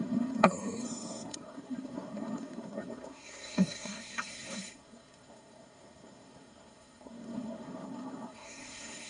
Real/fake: fake